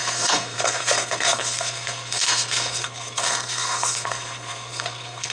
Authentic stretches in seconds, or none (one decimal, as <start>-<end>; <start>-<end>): none